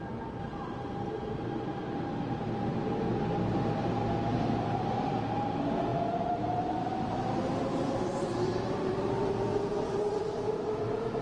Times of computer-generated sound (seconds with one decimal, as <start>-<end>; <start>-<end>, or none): 7.6-11.2